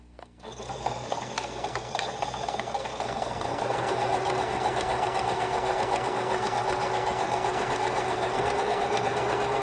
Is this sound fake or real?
fake